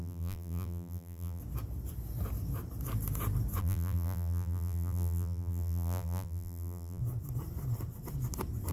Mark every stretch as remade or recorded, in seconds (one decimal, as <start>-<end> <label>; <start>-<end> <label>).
0.0-1.4 remade; 1.4-3.6 recorded; 3.6-7.0 remade; 7.0-8.7 recorded